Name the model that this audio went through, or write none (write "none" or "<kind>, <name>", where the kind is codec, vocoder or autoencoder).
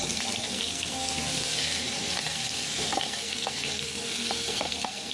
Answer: codec, SNAC